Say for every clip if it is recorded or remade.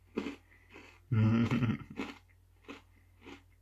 recorded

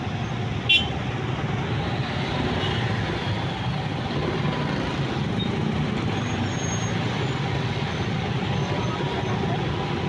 recorded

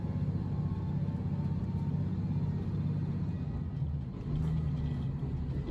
recorded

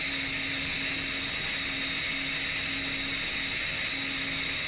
recorded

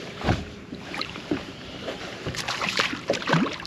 remade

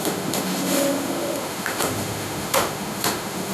remade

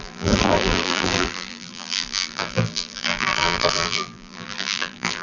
remade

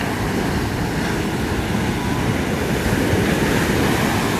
recorded